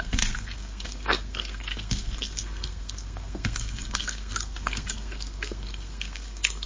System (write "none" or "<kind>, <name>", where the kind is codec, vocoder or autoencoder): codec, SNAC